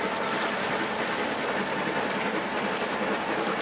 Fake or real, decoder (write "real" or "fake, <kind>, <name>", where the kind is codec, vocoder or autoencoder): real